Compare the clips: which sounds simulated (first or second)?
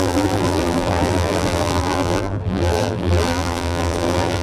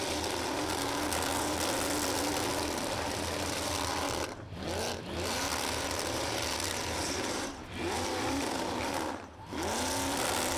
first